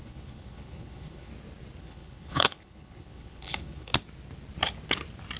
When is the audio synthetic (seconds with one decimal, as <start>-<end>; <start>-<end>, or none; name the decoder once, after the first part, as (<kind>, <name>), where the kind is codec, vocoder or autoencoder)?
0.0-1.3 (codec, HILCodec); 1.8-3.9